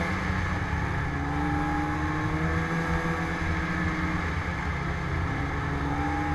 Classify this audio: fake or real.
real